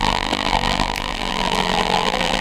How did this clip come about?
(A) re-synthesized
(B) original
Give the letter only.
A